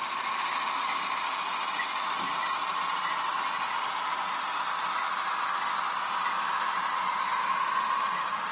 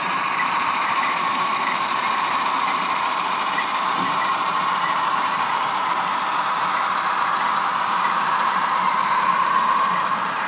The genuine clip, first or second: first